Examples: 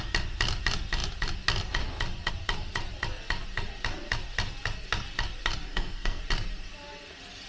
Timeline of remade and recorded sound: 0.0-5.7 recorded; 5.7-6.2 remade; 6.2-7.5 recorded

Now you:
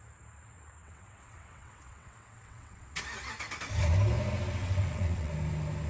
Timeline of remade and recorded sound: 0.0-0.8 recorded; 0.8-3.0 remade; 3.0-4.6 recorded; 4.6-5.3 remade; 5.3-5.9 recorded

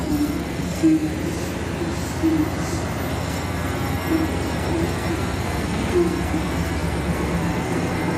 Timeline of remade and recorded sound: 0.0-1.1 remade; 1.1-3.1 recorded; 3.1-8.2 remade

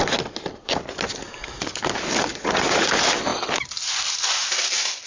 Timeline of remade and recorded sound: 0.0-2.3 recorded; 2.3-2.9 remade; 2.9-5.1 recorded

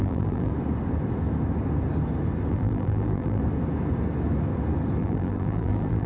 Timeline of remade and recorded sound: 0.0-0.5 remade; 0.5-2.5 recorded; 2.5-3.4 remade; 3.4-5.0 recorded; 5.0-6.1 remade

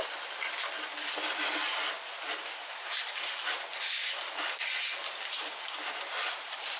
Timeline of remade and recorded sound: 0.0-6.8 recorded

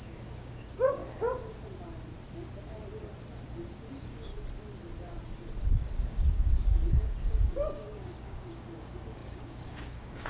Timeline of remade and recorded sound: 0.0-1.0 remade; 1.0-3.8 recorded; 3.8-4.3 remade; 4.3-5.8 recorded; 5.8-10.3 remade